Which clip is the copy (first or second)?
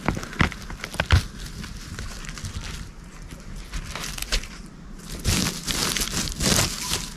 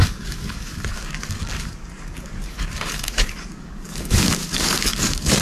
second